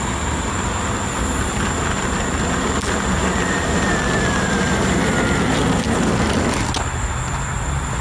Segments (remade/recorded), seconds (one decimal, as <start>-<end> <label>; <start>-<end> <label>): 0.0-8.0 recorded